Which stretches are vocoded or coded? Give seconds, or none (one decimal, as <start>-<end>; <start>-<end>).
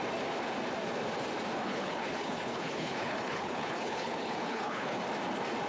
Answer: 1.6-5.0